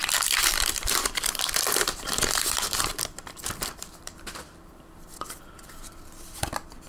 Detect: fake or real fake